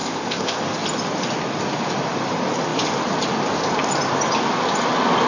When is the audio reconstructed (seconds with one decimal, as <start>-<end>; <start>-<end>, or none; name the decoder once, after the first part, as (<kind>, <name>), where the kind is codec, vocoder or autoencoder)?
0.0-0.6 (codec, ZipCodec)